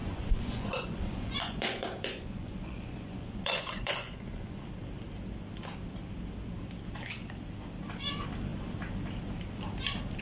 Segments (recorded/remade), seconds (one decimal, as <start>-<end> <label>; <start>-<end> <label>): 0.0-4.6 remade; 4.6-10.2 recorded